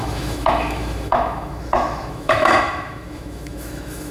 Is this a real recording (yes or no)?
no